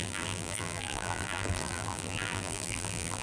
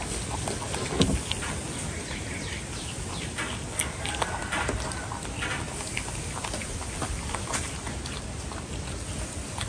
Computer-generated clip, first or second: first